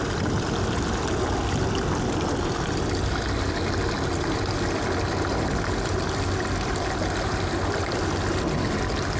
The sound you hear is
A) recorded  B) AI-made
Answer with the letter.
A